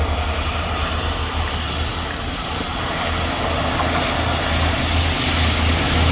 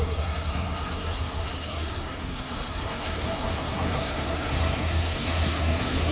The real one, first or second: first